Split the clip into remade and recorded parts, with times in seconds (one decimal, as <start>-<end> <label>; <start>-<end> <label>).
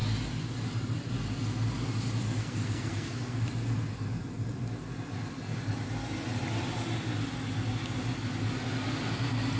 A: 0.0-2.4 recorded; 2.4-3.4 remade; 3.4-9.6 recorded